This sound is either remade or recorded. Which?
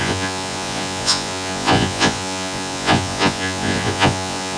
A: remade